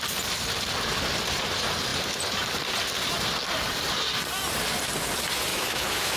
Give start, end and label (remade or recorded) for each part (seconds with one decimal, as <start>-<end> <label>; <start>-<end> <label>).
0.0-5.5 recorded; 5.5-6.2 remade